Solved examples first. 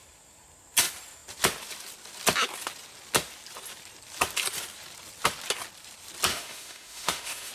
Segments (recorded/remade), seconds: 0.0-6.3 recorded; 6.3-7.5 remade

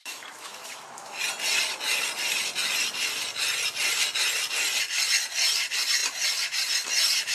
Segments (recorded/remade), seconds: 0.0-1.2 remade; 1.2-7.3 recorded

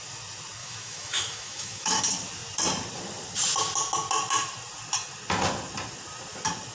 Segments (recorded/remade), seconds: 0.0-0.6 recorded; 0.6-2.0 remade; 2.0-6.7 recorded

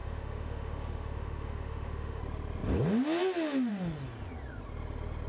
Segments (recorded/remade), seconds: 0.0-2.2 remade; 2.2-5.3 recorded